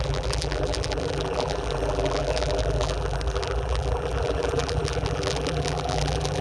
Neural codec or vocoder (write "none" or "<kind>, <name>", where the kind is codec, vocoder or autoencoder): vocoder, BigVGAN v2